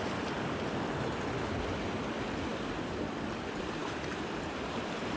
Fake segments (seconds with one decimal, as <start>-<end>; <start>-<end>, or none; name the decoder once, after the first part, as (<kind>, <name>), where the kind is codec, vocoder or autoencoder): none